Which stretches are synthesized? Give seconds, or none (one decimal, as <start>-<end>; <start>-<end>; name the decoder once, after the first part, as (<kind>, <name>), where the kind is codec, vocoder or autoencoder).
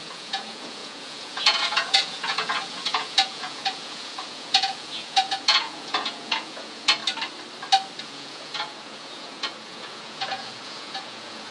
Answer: 0.0-7.0 (vocoder, Vocos); 8.0-11.5